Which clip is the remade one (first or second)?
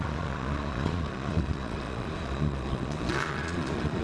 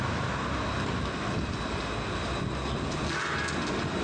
first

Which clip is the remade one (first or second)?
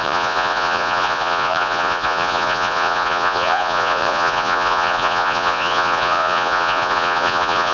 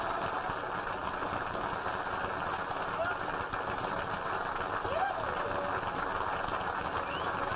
first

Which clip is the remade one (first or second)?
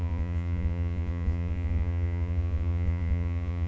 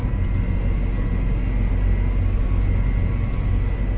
first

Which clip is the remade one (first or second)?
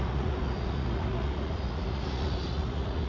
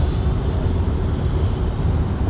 first